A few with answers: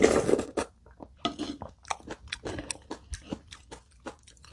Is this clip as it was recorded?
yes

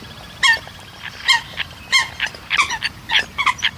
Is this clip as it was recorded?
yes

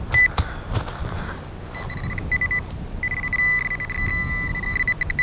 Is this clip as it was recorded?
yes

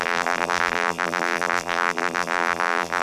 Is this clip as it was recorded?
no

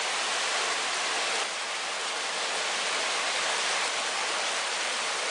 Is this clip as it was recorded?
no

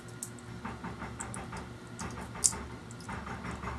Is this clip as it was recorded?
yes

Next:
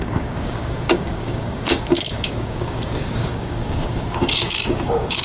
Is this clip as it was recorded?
no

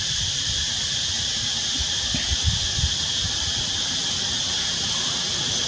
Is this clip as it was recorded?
yes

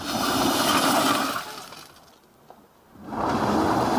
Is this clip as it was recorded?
yes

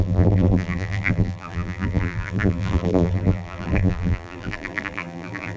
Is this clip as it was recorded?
no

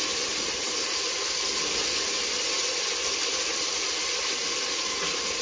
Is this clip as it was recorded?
yes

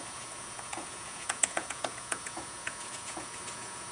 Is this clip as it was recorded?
no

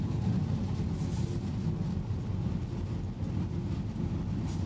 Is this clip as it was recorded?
yes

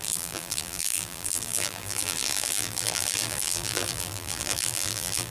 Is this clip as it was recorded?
no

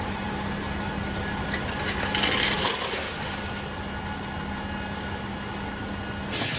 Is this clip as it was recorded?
yes